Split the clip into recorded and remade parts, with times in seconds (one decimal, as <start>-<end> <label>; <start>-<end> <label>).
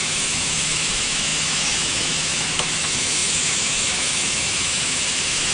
0.0-5.5 remade